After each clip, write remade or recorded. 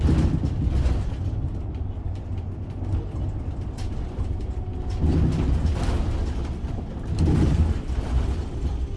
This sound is recorded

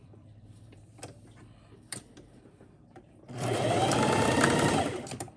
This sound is remade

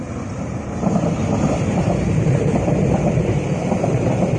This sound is remade